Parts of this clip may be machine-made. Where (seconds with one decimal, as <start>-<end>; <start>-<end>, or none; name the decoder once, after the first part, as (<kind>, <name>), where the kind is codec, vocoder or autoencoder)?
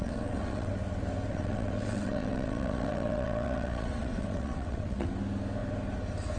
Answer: 0.0-0.7 (vocoder, WaveNeXt); 1.3-5.1